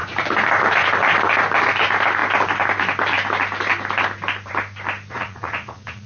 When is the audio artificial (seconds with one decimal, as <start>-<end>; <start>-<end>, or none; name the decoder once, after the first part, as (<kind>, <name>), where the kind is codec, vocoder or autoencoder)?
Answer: 5.1-6.1 (vocoder, Vocos)